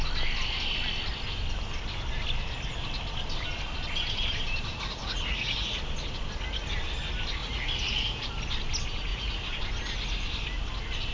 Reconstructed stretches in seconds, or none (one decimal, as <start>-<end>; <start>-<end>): 5.0-5.8; 7.4-8.3; 9.1-9.6